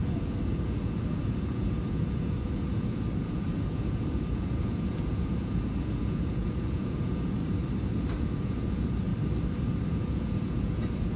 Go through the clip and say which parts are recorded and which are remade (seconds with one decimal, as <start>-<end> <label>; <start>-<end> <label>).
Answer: 0.0-7.4 remade; 7.4-8.2 recorded; 8.2-9.1 remade; 9.1-9.9 recorded; 9.9-11.2 remade